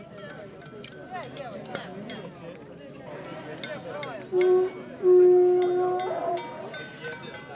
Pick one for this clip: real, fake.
real